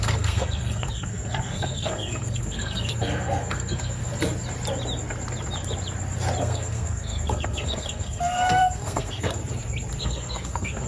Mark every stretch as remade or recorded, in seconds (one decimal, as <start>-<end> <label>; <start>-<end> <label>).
0.0-4.0 remade; 4.0-6.4 recorded; 6.4-9.4 remade; 9.4-10.0 recorded; 10.0-10.9 remade

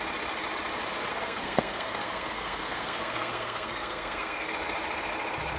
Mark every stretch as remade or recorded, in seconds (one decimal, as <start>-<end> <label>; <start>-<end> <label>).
0.0-1.1 recorded; 1.1-4.5 remade; 4.5-5.6 recorded